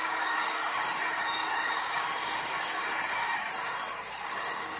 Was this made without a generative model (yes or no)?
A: no